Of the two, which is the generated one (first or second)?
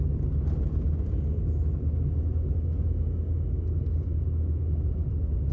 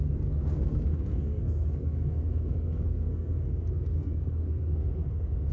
second